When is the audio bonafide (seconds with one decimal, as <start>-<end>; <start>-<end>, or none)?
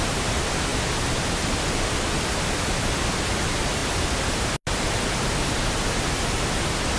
0.0-7.0